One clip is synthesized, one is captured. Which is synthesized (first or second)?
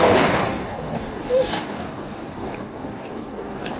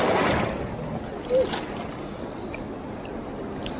first